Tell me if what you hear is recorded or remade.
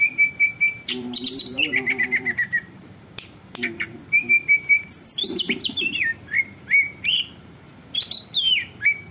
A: remade